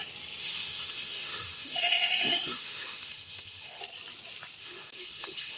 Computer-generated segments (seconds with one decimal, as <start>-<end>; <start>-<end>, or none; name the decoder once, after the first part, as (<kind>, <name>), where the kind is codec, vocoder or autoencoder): 0.4-3.8 (autoencoder, DAC-VAE); 4.6-5.6